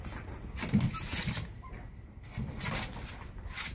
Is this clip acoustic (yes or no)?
yes